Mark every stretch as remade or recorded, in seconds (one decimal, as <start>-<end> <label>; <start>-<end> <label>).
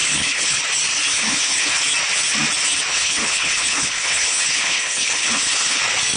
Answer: 0.0-0.6 remade; 0.6-1.1 recorded; 1.1-1.8 remade; 1.8-2.9 recorded; 2.9-5.8 remade; 5.8-6.2 recorded